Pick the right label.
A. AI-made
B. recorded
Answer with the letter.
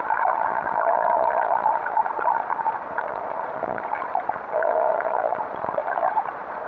A